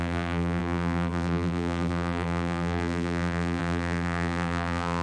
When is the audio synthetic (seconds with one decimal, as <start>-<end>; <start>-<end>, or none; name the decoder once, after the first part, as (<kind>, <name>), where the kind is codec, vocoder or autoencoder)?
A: 0.0-5.0 (vocoder, BigVGAN v2)